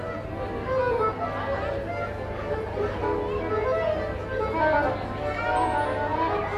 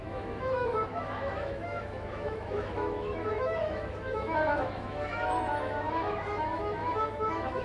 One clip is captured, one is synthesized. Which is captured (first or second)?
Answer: first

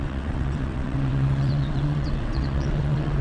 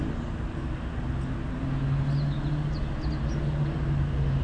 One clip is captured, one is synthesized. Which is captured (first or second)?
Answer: second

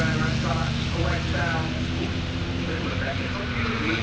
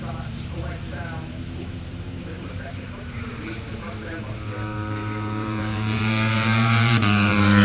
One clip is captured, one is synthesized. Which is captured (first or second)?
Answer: first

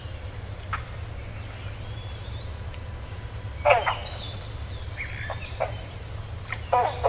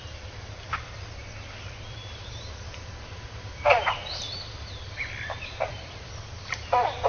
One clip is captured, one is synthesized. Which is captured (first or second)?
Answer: first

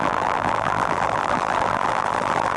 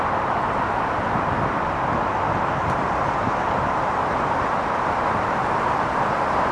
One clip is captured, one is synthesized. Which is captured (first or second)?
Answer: second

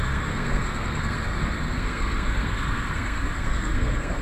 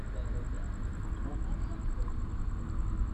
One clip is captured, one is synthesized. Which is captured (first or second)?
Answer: second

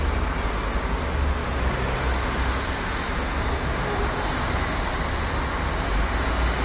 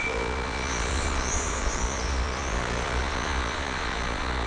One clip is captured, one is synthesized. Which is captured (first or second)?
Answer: first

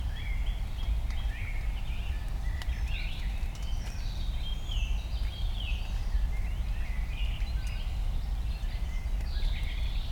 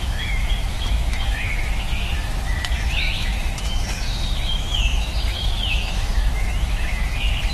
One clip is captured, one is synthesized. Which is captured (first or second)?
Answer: first